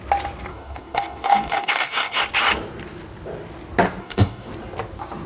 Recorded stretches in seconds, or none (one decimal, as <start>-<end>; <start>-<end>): 0.0-0.5; 2.2-4.0; 4.5-5.3